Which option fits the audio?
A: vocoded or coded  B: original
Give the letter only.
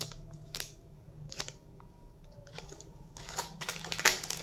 A